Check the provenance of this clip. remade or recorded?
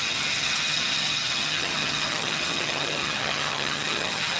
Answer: remade